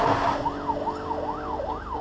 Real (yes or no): yes